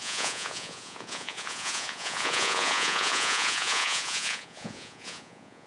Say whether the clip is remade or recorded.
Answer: remade